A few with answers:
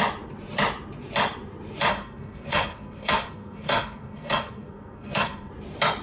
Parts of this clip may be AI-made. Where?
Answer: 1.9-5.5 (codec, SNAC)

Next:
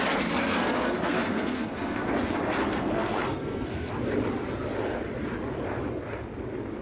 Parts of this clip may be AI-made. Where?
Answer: 0.4-2.1 (codec, SNAC); 2.6-3.9

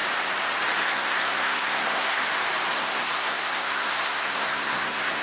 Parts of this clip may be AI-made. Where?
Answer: 0.8-2.2 (codec, SNAC); 2.7-5.2

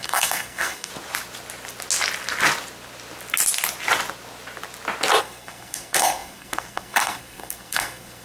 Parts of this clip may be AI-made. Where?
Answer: 0.0-0.9 (codec, SNAC); 5.2-8.2

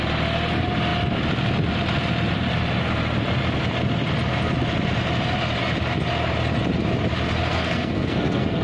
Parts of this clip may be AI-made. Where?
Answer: 7.5-8.6 (codec, SNAC)

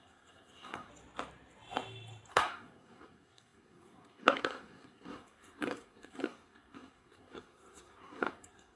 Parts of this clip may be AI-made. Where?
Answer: 0.0-0.9 (codec, SNAC); 2.3-8.8

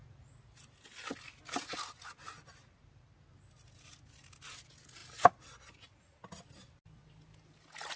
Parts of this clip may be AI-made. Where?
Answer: none

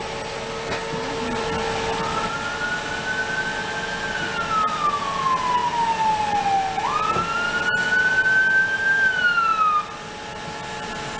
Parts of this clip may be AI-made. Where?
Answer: none